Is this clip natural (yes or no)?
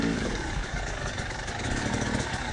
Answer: no